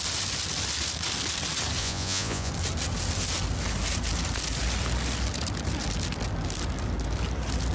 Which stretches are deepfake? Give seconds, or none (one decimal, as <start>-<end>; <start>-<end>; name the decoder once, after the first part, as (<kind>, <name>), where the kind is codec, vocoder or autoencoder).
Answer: 1.8-2.5 (vocoder, Vocos)